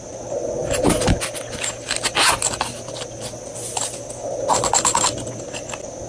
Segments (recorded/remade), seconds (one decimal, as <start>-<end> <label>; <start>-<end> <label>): 0.0-6.1 recorded